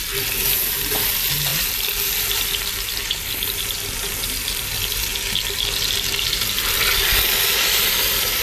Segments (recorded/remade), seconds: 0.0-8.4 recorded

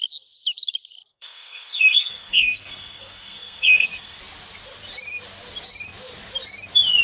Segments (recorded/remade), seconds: 0.0-1.1 recorded; 1.1-4.2 remade; 4.2-7.0 recorded

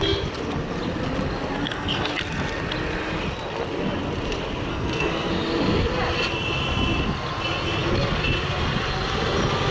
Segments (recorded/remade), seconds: 0.0-1.6 recorded; 1.6-2.1 remade; 2.1-4.7 recorded; 4.7-5.3 remade; 5.3-9.7 recorded

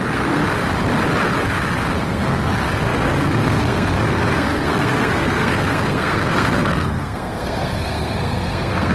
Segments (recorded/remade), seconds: 0.0-0.4 remade; 0.4-2.0 recorded; 2.0-8.9 remade

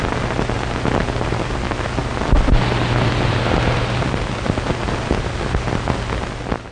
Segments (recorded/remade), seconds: 0.0-6.7 recorded

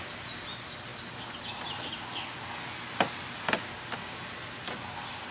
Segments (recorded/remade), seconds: 0.0-5.3 recorded

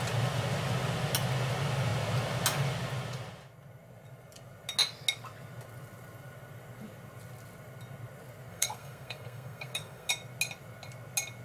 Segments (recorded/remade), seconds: 0.0-8.5 recorded; 8.5-10.1 remade; 10.1-11.4 recorded

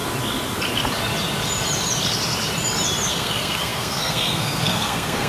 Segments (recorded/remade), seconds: 0.0-3.1 recorded; 3.1-5.3 remade